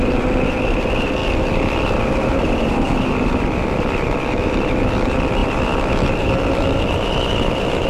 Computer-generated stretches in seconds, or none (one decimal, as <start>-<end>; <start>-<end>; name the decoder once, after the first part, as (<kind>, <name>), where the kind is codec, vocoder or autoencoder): 1.2-4.7 (vocoder, BigVGAN v2); 5.4-6.6